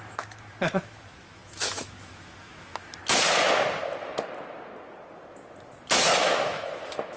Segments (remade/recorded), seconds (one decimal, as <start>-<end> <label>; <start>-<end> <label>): 0.0-3.0 remade; 3.0-6.0 recorded; 6.0-7.2 remade